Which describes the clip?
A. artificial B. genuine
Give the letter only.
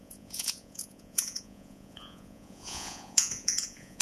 A